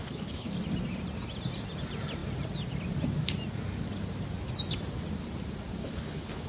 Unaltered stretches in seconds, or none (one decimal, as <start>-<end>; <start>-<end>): 0.5-5.8

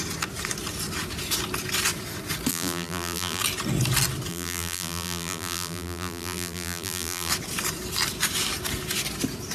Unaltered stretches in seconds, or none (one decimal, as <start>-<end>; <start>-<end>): 0.0-2.5; 3.4-4.3; 7.3-9.5

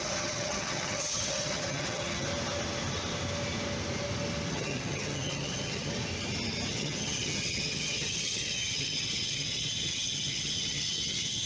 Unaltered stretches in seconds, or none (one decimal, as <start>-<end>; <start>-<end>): 2.3-4.5; 5.9-6.7

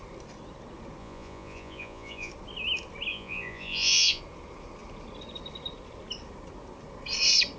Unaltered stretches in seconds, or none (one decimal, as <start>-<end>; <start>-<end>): 0.0-1.0; 2.3-3.1; 4.2-7.6

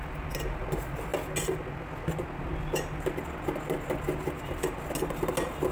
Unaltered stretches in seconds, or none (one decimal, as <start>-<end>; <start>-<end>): 0.0-5.7

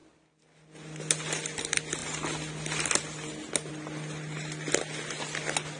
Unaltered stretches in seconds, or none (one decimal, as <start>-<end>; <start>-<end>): 0.0-5.8

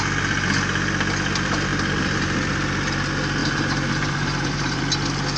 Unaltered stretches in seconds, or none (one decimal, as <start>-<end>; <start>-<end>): 0.0-3.4; 4.8-5.4

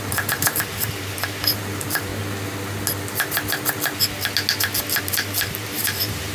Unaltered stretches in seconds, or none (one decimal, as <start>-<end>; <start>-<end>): 2.1-5.0